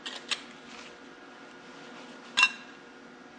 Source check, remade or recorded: recorded